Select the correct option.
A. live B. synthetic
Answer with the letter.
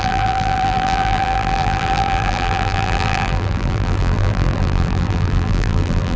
B